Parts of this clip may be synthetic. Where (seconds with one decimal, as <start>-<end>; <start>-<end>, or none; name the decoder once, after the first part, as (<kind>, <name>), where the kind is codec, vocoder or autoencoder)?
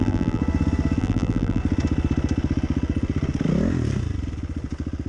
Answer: 0.0-0.4 (vocoder, BigVGAN v2); 1.0-1.6